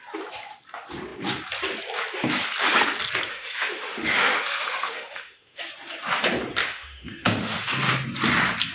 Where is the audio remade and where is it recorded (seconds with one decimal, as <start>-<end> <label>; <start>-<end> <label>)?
0.0-3.3 recorded; 3.3-5.6 remade; 5.6-6.6 recorded; 6.6-7.9 remade; 7.9-8.7 recorded